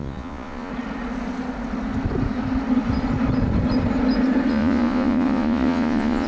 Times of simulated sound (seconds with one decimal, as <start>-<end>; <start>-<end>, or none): 0.0-0.7; 4.5-6.3